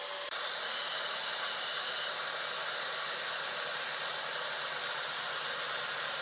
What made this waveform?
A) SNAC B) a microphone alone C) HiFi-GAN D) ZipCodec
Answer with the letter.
B